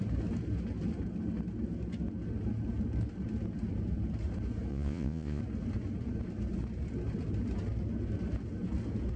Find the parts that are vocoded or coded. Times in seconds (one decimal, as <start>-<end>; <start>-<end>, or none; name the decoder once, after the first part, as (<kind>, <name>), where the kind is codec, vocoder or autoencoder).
4.7-5.4 (vocoder, Vocos)